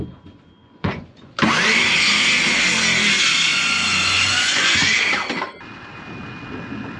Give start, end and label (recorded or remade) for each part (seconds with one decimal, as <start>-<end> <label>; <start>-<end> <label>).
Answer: 0.0-0.6 recorded; 0.6-1.3 remade; 1.3-3.5 recorded; 3.5-5.0 remade; 5.0-7.0 recorded